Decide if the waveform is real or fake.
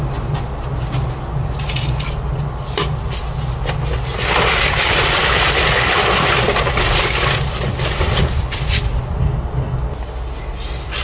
real